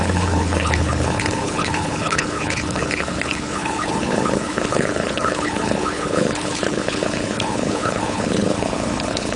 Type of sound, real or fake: fake